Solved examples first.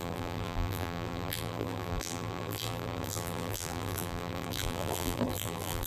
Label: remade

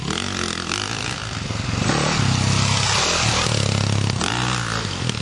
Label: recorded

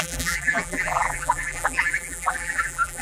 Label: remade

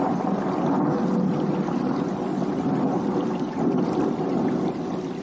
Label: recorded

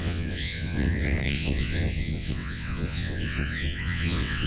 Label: remade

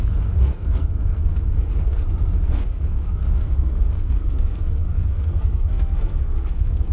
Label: remade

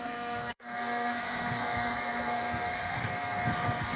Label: remade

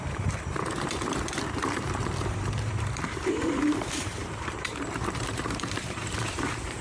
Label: remade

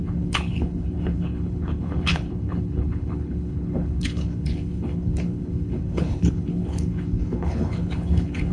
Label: remade